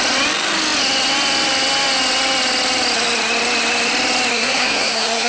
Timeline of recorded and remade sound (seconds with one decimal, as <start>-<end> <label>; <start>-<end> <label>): 0.0-4.3 recorded; 4.3-5.3 remade